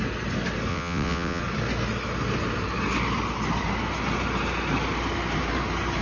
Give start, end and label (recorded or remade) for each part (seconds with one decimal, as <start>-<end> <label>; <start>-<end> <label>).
0.0-0.7 recorded; 0.7-1.4 remade; 1.4-6.0 recorded